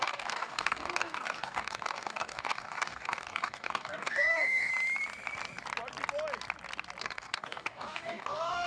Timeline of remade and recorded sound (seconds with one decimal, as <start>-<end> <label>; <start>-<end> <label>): 0.0-4.7 remade; 4.7-7.0 recorded; 7.0-8.7 remade

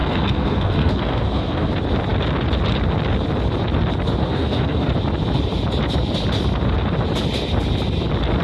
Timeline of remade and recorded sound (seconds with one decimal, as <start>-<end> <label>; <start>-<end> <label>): 0.0-1.7 remade; 1.7-4.2 recorded; 4.2-4.9 remade; 4.9-8.4 recorded